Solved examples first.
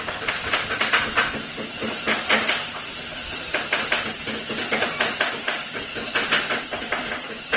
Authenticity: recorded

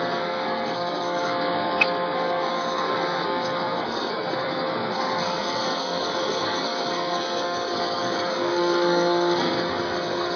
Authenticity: remade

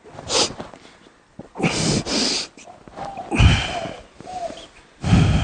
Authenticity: recorded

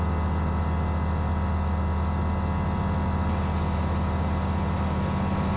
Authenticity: recorded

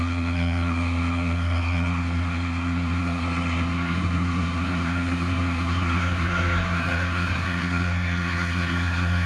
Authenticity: remade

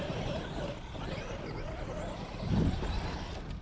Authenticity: recorded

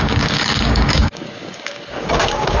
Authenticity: remade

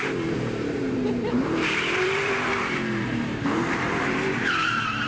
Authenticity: remade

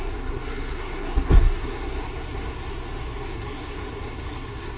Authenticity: remade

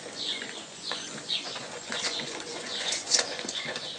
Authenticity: remade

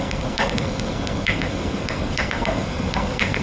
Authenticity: remade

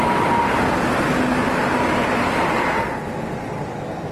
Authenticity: recorded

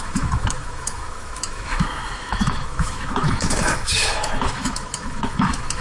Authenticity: remade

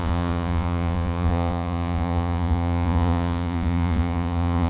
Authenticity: remade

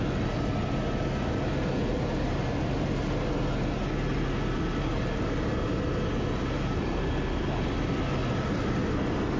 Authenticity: recorded